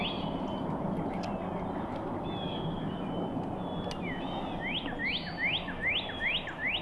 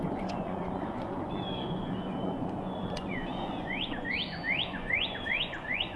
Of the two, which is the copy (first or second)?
second